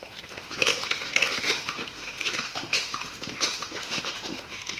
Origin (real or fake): fake